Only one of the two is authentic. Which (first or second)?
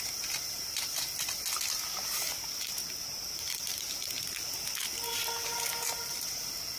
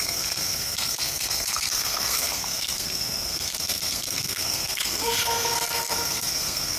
first